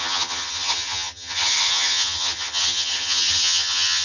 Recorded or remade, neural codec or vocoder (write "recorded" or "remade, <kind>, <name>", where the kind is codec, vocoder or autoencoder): remade, vocoder, HiFi-GAN